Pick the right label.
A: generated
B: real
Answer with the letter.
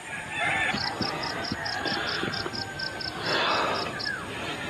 B